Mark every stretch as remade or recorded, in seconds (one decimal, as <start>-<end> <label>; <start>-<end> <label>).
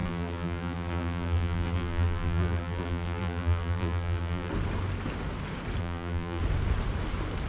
0.0-4.5 remade; 4.5-5.8 recorded; 5.8-6.4 remade; 6.4-7.5 recorded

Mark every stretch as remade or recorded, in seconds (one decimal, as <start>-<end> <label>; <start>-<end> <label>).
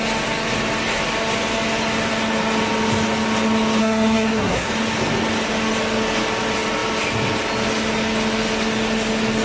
0.0-3.8 recorded; 3.8-4.7 remade; 4.7-9.4 recorded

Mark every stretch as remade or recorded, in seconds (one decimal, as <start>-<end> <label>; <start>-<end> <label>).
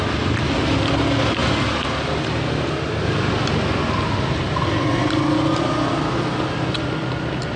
0.0-7.6 recorded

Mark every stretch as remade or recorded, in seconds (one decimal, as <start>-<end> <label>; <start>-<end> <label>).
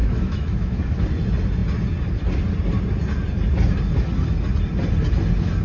0.0-1.0 remade; 1.0-5.6 recorded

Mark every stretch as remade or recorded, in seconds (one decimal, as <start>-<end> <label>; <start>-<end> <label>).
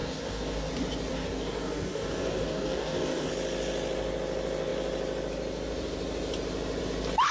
0.0-0.7 remade; 0.7-1.1 recorded; 1.1-3.3 remade; 3.3-7.3 recorded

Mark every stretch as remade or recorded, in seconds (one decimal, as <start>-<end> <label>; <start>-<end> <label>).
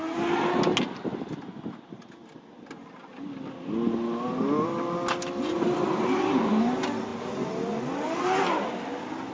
0.0-9.3 recorded